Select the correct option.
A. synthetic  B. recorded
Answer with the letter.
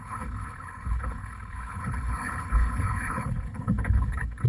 A